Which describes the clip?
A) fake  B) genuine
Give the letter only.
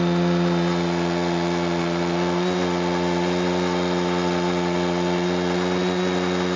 B